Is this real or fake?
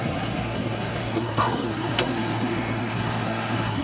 fake